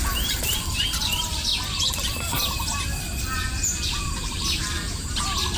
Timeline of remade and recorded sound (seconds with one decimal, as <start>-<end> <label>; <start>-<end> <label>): 0.0-1.5 remade; 1.5-3.2 recorded; 3.2-5.6 remade